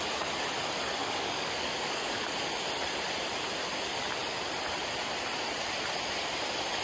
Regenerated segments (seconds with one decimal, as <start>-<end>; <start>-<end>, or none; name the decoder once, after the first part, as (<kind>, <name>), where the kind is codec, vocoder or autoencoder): 1.0-2.2 (codec, DAC)

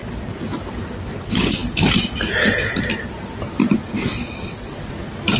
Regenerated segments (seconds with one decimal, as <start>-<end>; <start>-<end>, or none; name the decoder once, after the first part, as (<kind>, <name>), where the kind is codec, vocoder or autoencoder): 3.6-4.9 (codec, DAC)

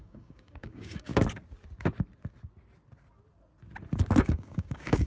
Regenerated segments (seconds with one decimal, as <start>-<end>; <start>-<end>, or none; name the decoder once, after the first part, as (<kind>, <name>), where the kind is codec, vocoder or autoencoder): 0.0-1.1 (codec, DAC); 4.2-5.1